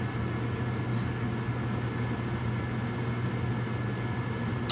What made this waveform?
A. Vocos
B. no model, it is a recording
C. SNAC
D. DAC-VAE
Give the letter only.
B